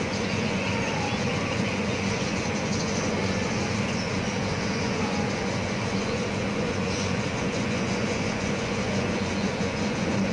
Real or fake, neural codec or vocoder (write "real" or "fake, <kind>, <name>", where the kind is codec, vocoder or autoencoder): fake, vocoder, Vocos